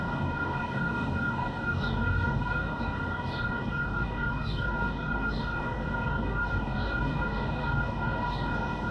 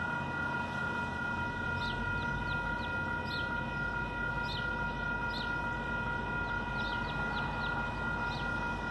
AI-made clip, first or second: first